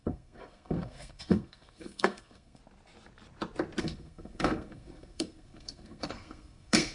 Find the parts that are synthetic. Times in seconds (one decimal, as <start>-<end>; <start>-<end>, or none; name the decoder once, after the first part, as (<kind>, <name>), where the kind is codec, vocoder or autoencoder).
0.0-2.6 (codec, SNAC); 3.8-6.9